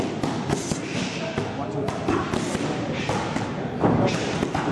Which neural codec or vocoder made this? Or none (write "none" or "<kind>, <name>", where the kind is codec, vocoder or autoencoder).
none